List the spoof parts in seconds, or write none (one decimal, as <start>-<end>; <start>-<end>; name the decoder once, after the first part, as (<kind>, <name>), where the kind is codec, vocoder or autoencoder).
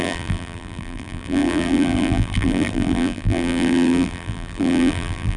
0.0-5.4 (vocoder, BigVGAN v2)